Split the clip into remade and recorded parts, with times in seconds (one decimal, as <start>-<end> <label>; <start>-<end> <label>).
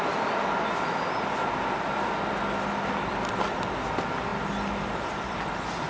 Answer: 0.0-5.9 recorded